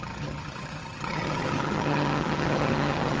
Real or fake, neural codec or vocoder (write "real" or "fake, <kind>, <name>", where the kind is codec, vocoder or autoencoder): fake, vocoder, HiFi-GAN